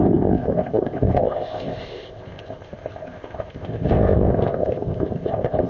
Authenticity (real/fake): fake